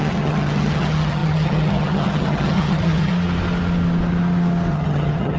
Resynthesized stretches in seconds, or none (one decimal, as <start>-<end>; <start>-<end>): 0.0-3.1; 4.7-5.4